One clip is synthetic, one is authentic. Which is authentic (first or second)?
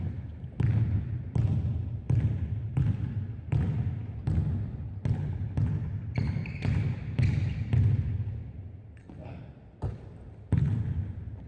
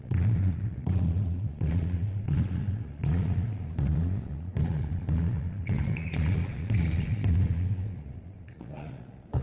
first